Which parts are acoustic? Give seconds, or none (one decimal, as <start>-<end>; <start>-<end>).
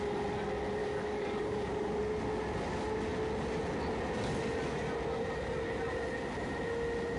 0.0-0.8; 2.0-7.2